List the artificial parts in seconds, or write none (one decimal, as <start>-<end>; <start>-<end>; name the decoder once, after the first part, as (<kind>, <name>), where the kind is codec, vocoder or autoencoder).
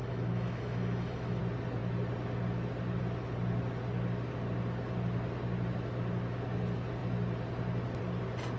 0.0-1.4 (autoencoder, DAC-VAE)